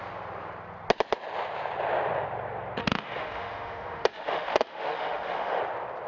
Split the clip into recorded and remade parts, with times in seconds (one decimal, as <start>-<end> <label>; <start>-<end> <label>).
0.0-2.8 recorded; 2.8-5.6 remade; 5.6-6.1 recorded